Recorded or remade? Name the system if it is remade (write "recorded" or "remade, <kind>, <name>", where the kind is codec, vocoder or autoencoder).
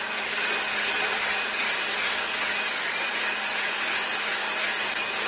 recorded